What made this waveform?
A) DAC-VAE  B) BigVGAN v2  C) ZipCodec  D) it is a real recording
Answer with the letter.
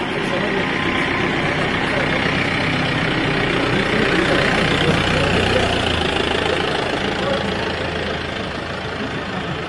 D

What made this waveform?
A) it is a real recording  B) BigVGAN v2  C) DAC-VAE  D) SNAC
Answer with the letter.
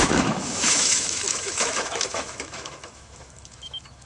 C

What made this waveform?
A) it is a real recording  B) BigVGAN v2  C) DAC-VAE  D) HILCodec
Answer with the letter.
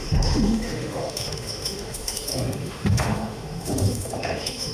C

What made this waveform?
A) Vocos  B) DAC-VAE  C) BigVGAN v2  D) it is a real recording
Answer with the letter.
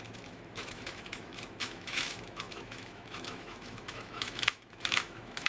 B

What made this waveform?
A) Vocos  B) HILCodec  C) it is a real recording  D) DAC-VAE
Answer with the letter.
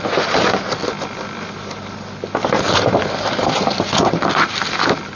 C